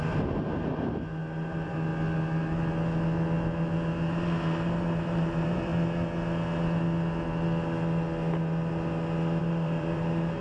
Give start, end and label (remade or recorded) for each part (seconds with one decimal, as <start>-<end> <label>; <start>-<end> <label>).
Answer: 0.0-1.9 remade; 1.9-4.1 recorded; 4.1-5.7 remade; 5.7-9.4 recorded; 9.4-10.4 remade